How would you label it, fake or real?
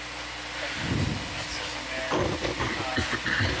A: real